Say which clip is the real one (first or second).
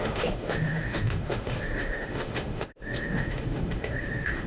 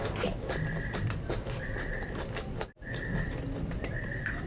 second